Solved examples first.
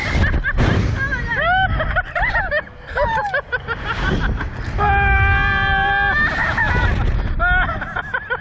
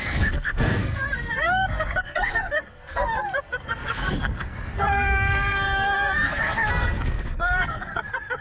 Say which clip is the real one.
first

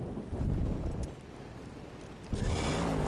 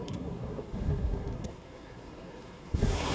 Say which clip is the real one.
first